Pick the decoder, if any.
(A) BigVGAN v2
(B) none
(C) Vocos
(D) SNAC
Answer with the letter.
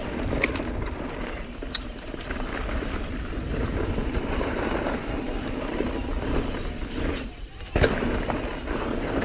A